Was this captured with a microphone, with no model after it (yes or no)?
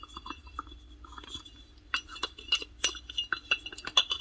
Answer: yes